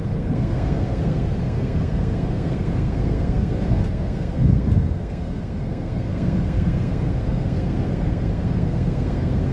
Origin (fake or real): fake